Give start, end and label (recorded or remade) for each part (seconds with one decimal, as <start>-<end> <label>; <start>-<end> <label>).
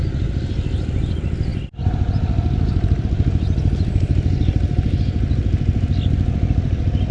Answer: 0.0-7.1 recorded